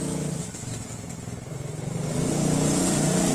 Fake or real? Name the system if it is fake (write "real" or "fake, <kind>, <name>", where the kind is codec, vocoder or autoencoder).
real